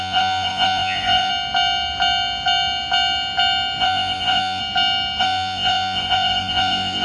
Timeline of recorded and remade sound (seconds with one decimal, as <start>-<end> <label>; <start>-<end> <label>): 0.0-1.3 remade; 1.3-3.8 recorded; 3.8-4.6 remade; 4.6-5.2 recorded; 5.2-7.0 remade